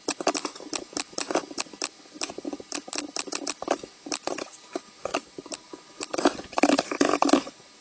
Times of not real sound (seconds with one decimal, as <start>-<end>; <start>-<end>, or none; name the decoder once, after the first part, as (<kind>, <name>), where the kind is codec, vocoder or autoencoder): 5.1-5.7 (vocoder, BigVGAN v2)